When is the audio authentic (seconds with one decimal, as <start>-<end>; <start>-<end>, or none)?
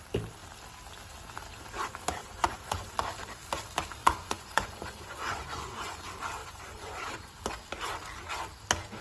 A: 0.0-2.2; 2.9-4.0; 6.0-6.4; 7.4-9.0